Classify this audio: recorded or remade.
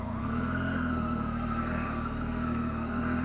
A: remade